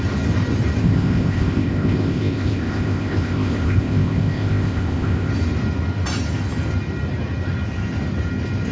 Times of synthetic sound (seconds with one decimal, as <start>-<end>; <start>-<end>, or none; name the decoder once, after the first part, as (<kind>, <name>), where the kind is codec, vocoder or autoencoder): 0.8-5.3 (codec, ZipCodec)